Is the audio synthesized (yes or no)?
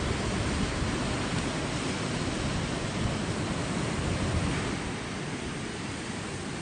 no